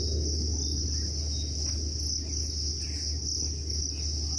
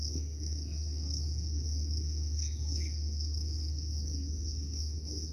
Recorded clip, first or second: first